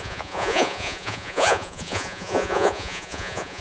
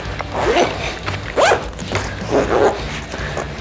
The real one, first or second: second